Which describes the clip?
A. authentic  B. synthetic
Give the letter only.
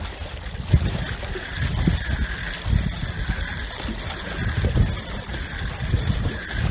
A